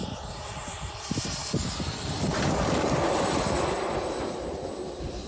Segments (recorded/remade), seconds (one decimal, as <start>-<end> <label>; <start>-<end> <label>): 0.0-1.4 recorded; 1.4-3.4 remade; 3.4-5.3 recorded